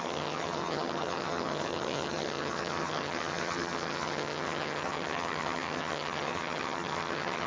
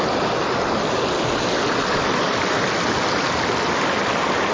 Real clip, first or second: second